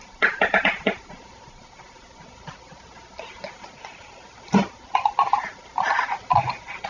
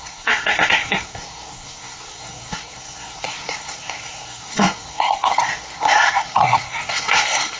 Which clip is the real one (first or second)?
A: first